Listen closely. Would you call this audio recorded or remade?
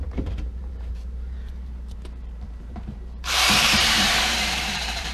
remade